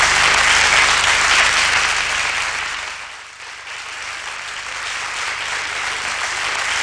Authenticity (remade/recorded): recorded